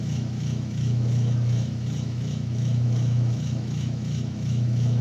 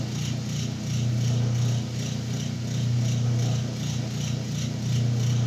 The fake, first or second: first